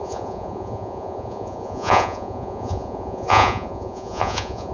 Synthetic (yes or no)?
yes